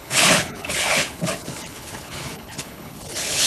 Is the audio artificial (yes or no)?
yes